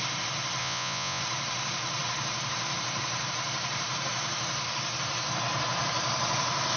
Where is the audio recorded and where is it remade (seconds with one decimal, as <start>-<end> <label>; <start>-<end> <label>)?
0.0-0.6 recorded; 0.6-1.2 remade; 1.2-6.8 recorded